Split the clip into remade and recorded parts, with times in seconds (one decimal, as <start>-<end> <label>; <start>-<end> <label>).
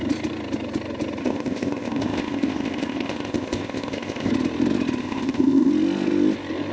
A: 0.0-1.2 recorded; 1.2-4.3 remade; 4.3-5.0 recorded; 5.0-5.7 remade; 5.7-6.7 recorded